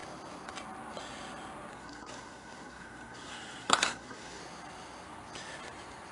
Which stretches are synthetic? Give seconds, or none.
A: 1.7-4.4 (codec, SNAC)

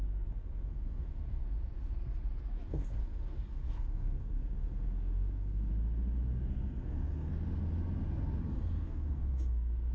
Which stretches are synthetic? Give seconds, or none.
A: 0.0-1.4 (codec, SNAC); 2.7-5.7; 6.5-7.3; 8.5-9.9

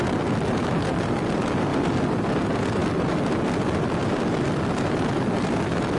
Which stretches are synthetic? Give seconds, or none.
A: none

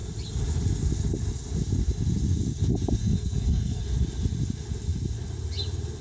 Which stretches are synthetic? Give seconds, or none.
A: 3.0-3.8 (codec, SNAC)

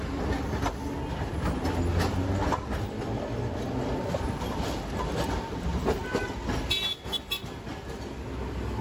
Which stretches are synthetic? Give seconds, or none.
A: none

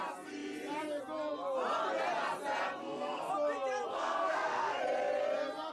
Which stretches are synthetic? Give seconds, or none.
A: 2.8-3.3 (codec, SNAC); 3.9-4.8

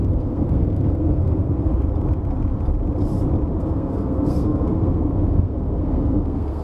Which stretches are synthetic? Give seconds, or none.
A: 0.0-1.7 (codec, SNAC); 3.6-6.6

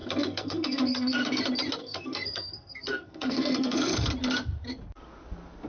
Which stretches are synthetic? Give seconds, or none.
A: 0.0-1.4 (codec, SNAC); 1.8-4.1